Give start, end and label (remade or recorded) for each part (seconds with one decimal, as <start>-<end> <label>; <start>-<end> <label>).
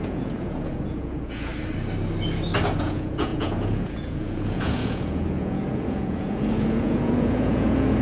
0.0-1.5 remade; 1.5-2.8 recorded; 2.8-8.0 remade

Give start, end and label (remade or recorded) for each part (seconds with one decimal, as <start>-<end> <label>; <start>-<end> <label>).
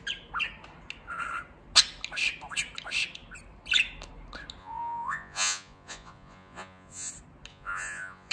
0.0-4.6 recorded; 4.6-7.1 remade; 7.1-7.5 recorded; 7.5-8.3 remade